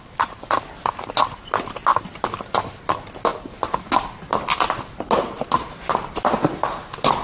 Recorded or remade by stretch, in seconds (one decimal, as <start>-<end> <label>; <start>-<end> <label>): 0.0-7.2 recorded